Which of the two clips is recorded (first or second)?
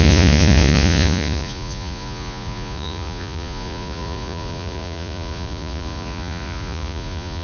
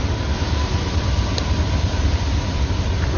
second